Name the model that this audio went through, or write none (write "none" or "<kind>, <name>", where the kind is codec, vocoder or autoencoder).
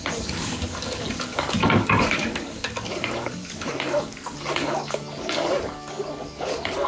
codec, DAC